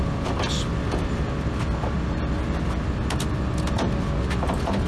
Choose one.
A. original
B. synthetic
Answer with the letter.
A